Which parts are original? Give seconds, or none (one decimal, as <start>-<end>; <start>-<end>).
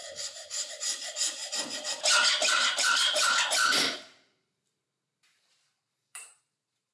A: 1.4-2.3